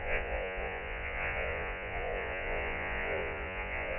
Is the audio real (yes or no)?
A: no